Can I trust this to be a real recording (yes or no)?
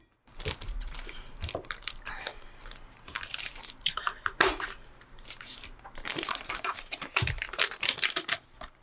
no